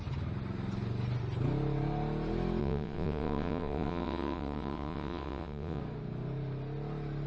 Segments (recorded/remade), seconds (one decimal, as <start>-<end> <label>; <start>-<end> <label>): 0.0-2.6 recorded; 2.6-5.8 remade; 5.8-7.3 recorded